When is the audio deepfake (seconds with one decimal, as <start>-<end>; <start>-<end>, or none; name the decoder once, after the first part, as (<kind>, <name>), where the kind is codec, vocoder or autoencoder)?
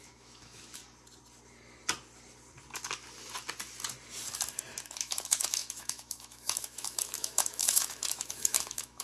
0.0-0.8 (autoencoder, DAC-VAE); 4.8-9.0